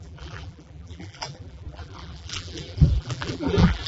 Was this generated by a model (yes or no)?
yes